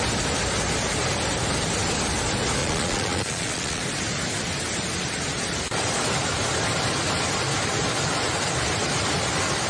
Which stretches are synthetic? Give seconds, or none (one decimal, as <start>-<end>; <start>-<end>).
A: 2.6-3.8